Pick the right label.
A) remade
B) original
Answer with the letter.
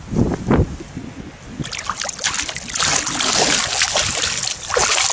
B